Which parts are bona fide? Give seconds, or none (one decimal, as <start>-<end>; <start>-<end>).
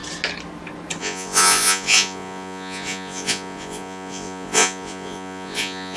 0.0-1.0